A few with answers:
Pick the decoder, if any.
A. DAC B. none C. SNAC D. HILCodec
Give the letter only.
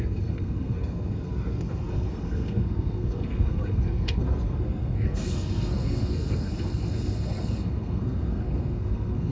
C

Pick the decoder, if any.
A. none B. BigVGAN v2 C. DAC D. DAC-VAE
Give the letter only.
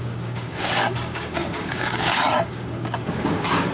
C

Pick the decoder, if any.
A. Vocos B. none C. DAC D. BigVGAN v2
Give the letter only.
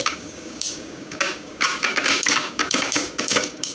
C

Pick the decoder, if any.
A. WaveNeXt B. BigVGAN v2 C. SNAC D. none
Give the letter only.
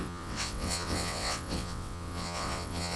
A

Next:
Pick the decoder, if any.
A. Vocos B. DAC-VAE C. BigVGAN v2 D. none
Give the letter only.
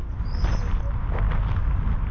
D